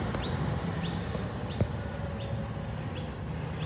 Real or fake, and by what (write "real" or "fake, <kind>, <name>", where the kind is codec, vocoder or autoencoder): real